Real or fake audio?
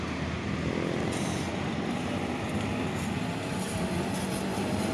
real